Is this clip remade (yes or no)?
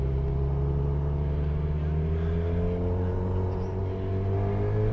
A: no